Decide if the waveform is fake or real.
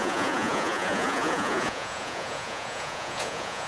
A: fake